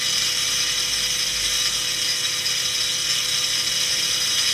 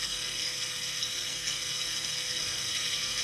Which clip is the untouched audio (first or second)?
first